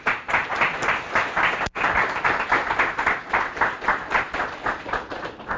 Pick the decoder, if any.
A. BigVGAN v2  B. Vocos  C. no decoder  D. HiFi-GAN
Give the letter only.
C